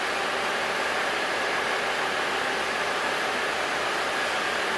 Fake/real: real